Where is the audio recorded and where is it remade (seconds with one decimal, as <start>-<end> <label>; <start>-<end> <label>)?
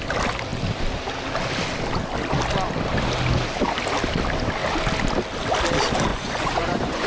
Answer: 0.0-6.1 recorded; 6.1-7.1 remade